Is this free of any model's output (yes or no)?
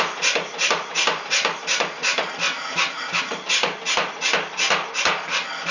yes